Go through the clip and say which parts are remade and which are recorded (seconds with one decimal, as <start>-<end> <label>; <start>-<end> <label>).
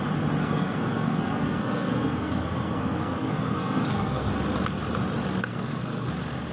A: 0.0-0.4 recorded; 0.4-4.3 remade; 4.3-5.5 recorded; 5.5-6.1 remade; 6.1-6.5 recorded